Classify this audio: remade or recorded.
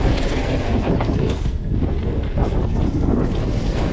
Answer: remade